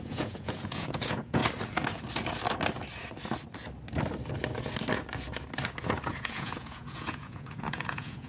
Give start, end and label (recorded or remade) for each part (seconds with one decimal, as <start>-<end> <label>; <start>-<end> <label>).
0.0-1.4 remade; 1.4-6.1 recorded; 6.1-8.3 remade